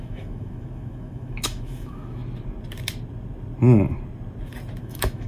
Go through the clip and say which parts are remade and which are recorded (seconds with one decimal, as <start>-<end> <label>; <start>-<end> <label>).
0.0-2.2 remade; 2.2-4.8 recorded; 4.8-5.3 remade